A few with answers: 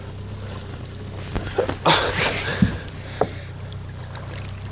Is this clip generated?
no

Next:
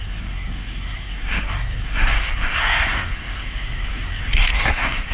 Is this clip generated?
yes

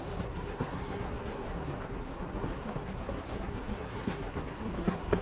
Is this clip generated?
yes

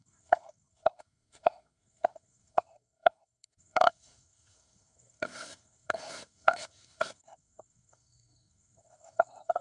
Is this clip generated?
yes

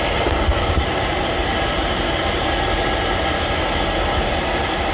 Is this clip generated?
no